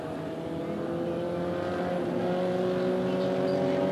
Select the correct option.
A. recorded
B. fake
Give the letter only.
A